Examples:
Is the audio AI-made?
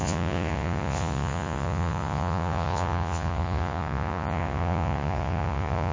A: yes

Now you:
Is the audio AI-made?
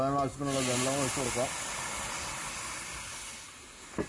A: no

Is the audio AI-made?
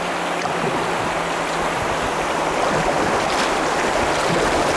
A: no